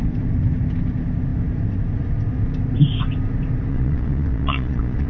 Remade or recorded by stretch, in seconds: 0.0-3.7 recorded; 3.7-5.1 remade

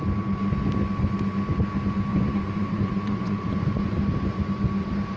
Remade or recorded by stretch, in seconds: 0.0-2.1 recorded; 2.1-4.0 remade; 4.0-5.2 recorded

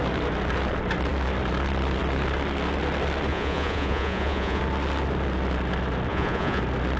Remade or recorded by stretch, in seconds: 0.0-3.3 recorded; 3.3-4.6 remade; 4.6-6.1 recorded; 6.1-6.6 remade; 6.6-7.0 recorded

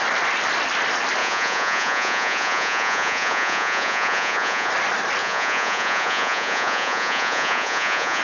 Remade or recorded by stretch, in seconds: 0.0-1.2 recorded; 1.2-4.7 remade; 4.7-5.2 recorded; 5.2-8.2 remade

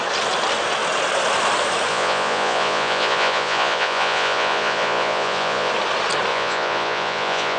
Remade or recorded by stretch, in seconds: 0.0-1.9 recorded; 1.9-5.7 remade; 5.7-6.3 recorded; 6.3-7.6 remade

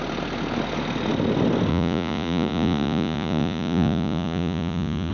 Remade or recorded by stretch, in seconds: 0.0-1.7 recorded; 1.7-5.1 remade

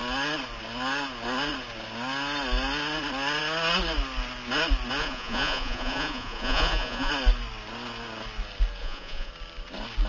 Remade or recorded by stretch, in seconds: 0.0-5.0 recorded; 5.0-7.1 remade; 7.1-8.8 recorded; 8.8-9.3 remade; 9.3-10.1 recorded